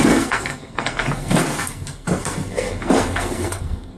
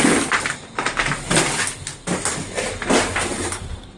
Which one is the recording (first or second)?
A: second